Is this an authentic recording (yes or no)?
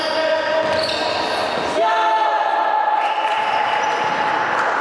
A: yes